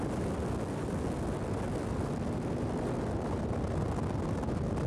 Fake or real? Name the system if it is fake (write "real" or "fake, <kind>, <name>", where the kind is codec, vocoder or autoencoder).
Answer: real